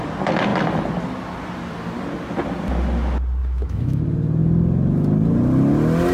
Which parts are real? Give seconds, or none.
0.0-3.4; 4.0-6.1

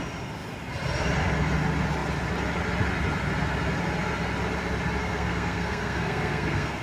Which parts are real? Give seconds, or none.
0.0-5.0

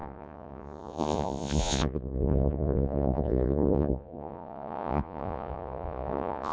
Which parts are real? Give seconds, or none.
none

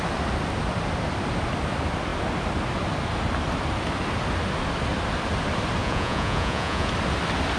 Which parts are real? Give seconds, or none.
0.0-5.8; 6.9-7.6

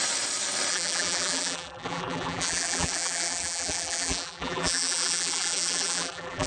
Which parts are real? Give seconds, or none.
0.0-0.7